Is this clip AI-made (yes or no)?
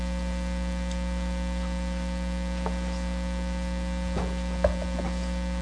no